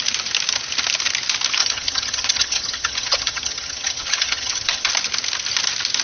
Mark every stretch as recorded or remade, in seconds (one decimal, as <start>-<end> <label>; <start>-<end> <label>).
0.0-1.6 recorded; 1.6-4.9 remade; 4.9-6.0 recorded